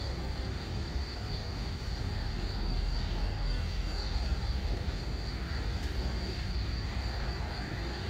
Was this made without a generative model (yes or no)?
no